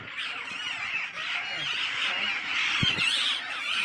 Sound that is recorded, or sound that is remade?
recorded